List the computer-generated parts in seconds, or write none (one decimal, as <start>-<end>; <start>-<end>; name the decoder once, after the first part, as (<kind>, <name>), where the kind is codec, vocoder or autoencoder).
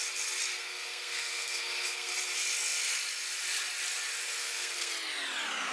0.6-2.1 (codec, SNAC); 4.4-4.9